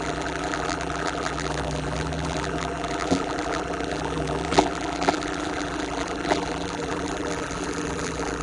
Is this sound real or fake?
fake